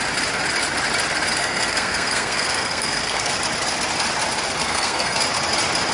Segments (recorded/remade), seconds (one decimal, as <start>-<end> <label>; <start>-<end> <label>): 0.0-1.4 recorded; 1.4-3.3 remade; 3.3-4.6 recorded; 4.6-5.2 remade; 5.2-5.9 recorded